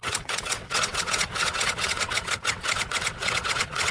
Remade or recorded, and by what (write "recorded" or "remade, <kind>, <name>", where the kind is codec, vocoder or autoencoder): remade, vocoder, WaveNeXt